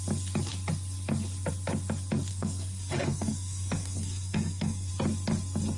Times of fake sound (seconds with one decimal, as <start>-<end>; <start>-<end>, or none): 2.3-4.9